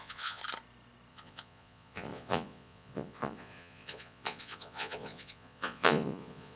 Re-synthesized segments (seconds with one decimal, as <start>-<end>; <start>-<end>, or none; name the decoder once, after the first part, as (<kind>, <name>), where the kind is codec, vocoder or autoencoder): 0.0-0.4 (vocoder, Vocos); 1.1-6.6